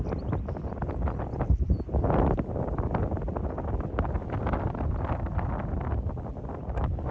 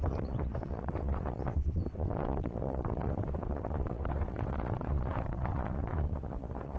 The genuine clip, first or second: first